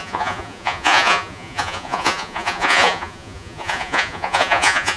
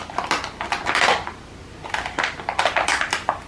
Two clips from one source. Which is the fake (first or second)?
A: first